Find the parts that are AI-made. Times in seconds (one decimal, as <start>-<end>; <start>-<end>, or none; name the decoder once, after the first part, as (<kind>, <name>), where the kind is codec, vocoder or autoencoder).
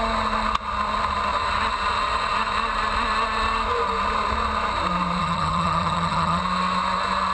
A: 5.2-6.4 (vocoder, HiFi-GAN)